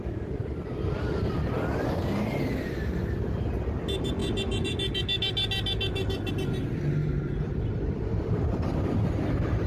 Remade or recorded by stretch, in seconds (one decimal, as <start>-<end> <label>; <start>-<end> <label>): 0.0-7.0 recorded; 7.0-8.4 remade; 8.4-9.7 recorded